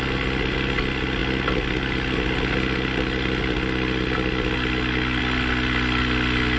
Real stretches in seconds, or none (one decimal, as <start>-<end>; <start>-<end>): 0.0-6.6